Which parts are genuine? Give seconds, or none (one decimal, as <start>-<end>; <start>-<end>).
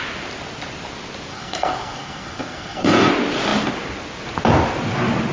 0.0-1.3; 3.1-5.3